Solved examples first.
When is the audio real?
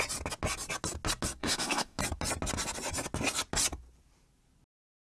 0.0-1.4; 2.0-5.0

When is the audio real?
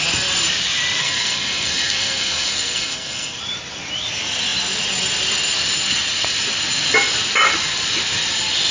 0.0-1.0; 3.4-8.7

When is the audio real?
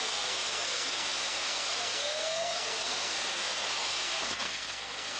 none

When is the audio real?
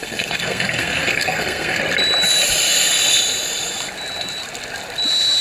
1.8-5.4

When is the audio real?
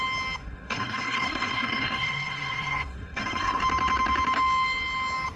0.0-0.4; 3.6-5.4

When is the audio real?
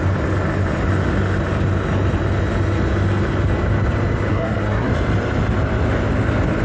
0.0-4.3; 4.9-6.6